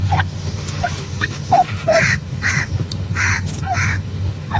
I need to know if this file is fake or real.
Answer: fake